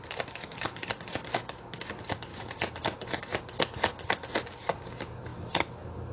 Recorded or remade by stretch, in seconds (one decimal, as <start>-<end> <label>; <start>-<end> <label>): 0.0-6.1 recorded